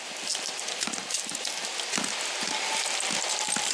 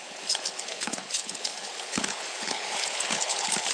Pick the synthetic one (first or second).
second